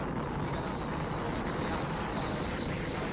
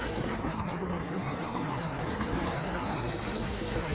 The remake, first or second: second